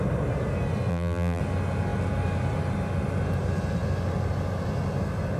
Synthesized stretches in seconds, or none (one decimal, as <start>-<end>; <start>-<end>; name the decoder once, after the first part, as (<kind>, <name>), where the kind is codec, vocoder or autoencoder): 0.9-1.4 (vocoder, BigVGAN v2)